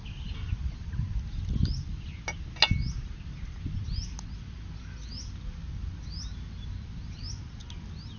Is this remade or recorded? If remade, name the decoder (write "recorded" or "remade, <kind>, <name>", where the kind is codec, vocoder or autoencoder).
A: recorded